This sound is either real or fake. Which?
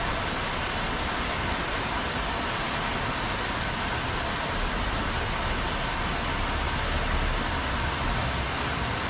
real